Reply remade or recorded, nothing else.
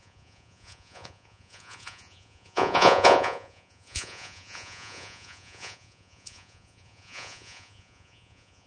remade